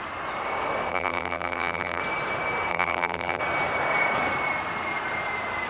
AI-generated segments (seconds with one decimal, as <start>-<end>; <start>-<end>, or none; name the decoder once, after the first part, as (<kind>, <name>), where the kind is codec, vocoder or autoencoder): 0.9-2.0 (vocoder, BigVGAN v2); 2.7-3.4